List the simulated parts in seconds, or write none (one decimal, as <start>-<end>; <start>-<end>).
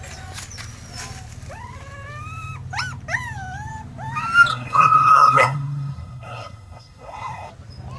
4.5-7.5